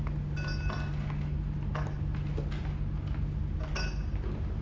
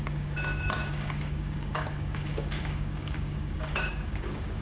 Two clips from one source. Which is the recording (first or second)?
first